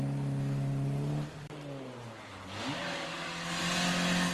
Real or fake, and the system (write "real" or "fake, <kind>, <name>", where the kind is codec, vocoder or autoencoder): real